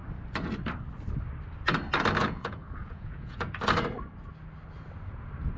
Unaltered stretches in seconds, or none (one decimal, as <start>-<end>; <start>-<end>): 0.0-2.2; 3.5-5.6